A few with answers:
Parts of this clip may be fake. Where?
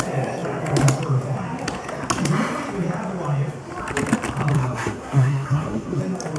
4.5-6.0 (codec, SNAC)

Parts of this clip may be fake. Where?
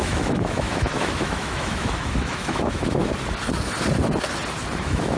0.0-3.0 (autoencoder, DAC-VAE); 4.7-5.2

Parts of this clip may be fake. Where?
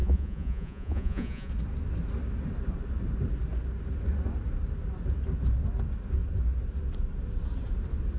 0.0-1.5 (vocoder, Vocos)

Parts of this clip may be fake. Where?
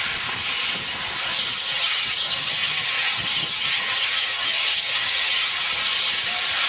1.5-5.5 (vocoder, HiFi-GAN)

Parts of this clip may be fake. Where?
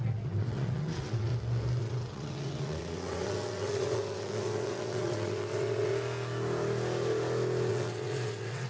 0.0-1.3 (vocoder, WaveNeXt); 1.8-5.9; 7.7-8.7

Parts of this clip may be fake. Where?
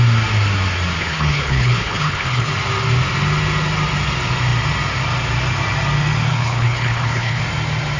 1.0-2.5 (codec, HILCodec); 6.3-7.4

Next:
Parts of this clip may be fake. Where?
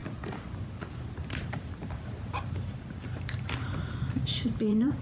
1.3-5.0 (vocoder, BigVGAN v2)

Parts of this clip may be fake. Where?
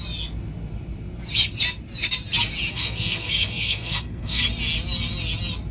2.7-4.4 (codec, SNAC)